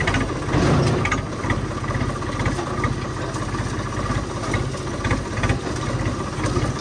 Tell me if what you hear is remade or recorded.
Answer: recorded